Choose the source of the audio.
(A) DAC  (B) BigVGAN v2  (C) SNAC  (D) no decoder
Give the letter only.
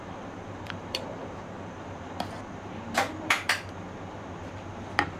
B